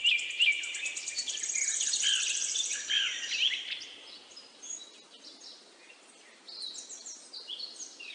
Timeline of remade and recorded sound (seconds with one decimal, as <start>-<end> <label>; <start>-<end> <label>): 0.0-8.1 recorded